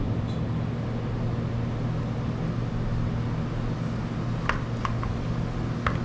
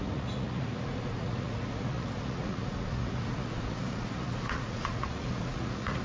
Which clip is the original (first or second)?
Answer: first